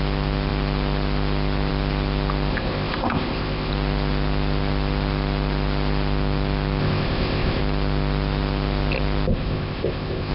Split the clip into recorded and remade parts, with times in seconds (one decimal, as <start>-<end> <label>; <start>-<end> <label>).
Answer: 0.0-2.5 recorded; 2.5-3.7 remade; 3.7-6.8 recorded; 6.8-7.6 remade; 7.6-9.3 recorded; 9.3-10.3 remade